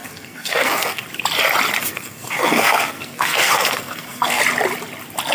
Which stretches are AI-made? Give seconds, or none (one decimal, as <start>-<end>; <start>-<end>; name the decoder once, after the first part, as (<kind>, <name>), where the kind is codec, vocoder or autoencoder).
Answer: 0.0-1.0 (codec, SNAC); 1.8-4.4